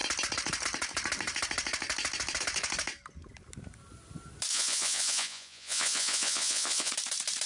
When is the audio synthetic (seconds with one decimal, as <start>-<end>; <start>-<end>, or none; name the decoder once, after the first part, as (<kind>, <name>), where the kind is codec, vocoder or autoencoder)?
4.5-6.9 (vocoder, Vocos)